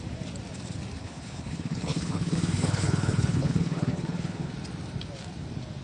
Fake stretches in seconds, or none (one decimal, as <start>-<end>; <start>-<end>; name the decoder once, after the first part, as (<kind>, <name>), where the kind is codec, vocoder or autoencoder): 1.0-4.5 (codec, HILCodec)